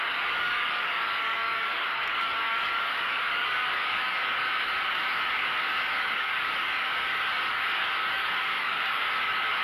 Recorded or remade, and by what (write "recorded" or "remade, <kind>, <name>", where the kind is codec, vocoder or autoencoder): remade, codec, DAC